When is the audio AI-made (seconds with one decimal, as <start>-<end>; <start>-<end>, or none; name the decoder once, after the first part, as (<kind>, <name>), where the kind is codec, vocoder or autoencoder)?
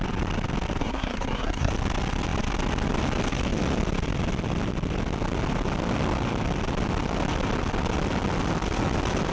0.8-1.7 (codec, SNAC)